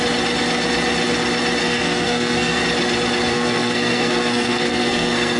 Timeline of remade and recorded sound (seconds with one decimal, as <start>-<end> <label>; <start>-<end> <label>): 0.0-1.6 recorded; 1.6-2.6 remade; 2.6-3.3 recorded; 3.3-5.4 remade